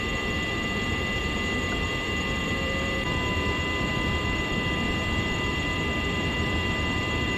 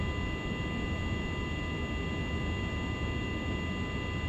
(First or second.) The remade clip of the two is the first